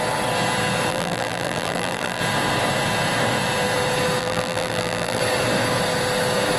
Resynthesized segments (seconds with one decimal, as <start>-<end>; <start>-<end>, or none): 0.9-2.2; 4.2-5.2